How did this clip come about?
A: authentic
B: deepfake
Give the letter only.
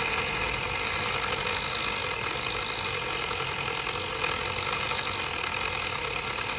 A